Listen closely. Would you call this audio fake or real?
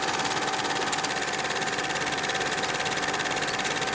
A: real